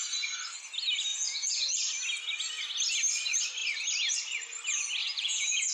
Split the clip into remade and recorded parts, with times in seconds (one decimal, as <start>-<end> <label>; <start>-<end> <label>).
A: 0.0-1.1 recorded; 1.1-1.9 remade; 1.9-5.0 recorded; 5.0-5.7 remade